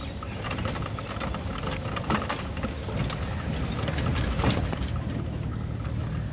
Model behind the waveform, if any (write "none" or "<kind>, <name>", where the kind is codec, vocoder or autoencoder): none